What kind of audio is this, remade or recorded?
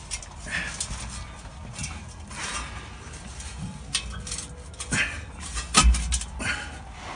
recorded